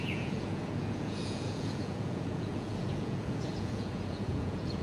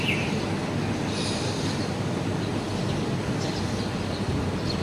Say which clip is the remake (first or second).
first